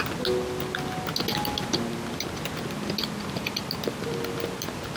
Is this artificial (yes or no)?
no